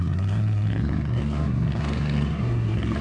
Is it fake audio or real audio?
fake